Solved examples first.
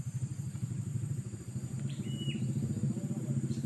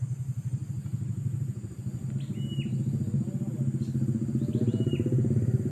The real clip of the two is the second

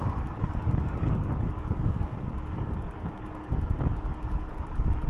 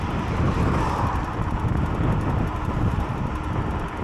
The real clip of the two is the second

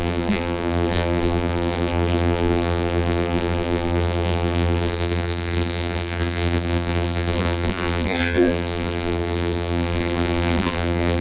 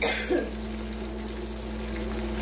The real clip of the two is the second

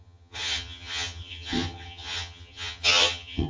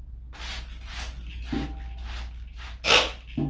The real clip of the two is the second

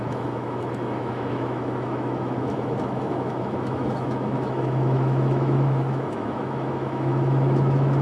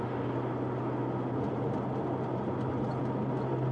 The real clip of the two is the second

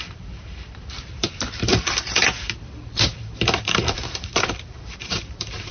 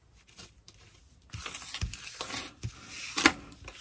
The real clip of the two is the second